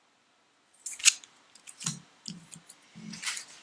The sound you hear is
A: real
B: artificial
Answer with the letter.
A